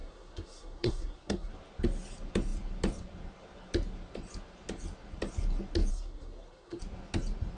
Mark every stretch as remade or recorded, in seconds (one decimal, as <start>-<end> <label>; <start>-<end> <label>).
0.0-1.5 remade; 1.5-5.9 recorded; 5.9-6.8 remade; 6.8-7.6 recorded